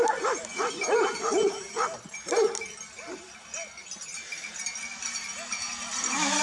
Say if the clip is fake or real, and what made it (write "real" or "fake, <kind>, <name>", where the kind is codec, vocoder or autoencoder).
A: real